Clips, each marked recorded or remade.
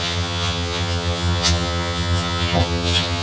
remade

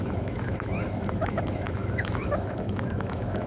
remade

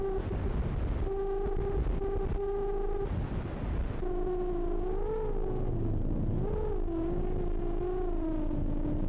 recorded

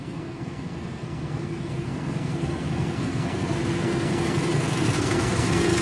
remade